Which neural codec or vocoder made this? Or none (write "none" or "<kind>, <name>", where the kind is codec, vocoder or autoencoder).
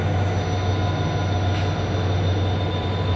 none